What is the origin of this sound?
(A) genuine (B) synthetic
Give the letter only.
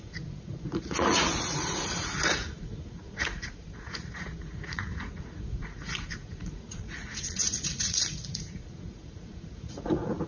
B